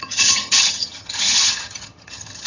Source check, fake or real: fake